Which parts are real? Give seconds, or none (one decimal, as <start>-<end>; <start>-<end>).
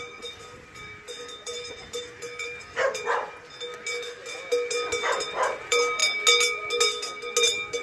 3.7-5.2; 6.0-7.8